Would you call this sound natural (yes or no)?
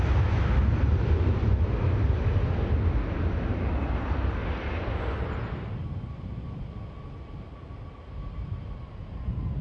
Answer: yes